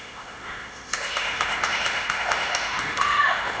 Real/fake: fake